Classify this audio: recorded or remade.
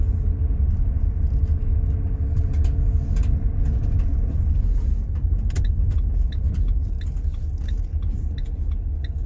recorded